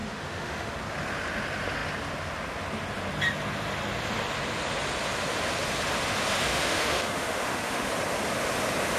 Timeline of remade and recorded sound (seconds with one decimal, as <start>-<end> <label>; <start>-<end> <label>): 0.0-0.7 remade; 0.7-6.5 recorded; 6.5-7.9 remade; 7.9-9.0 recorded